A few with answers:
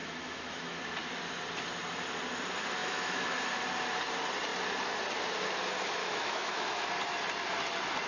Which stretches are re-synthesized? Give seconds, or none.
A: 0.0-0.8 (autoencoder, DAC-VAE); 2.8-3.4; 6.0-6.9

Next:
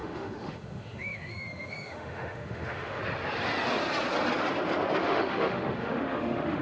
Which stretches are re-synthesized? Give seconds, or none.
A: 0.0-3.0 (autoencoder, DAC-VAE); 5.0-6.6

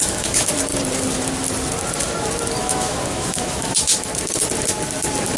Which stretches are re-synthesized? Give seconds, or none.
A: 0.0-0.5 (autoencoder, DAC-VAE); 2.6-4.1

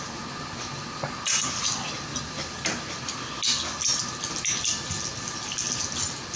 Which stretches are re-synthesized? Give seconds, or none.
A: none